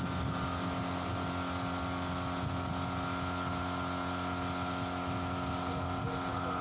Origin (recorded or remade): recorded